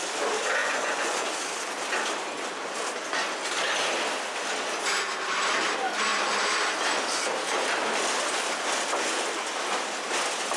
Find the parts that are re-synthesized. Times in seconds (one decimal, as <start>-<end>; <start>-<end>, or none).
0.6-1.3